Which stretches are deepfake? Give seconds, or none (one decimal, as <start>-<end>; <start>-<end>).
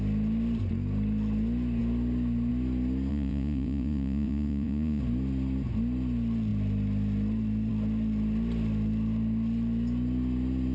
3.1-5.0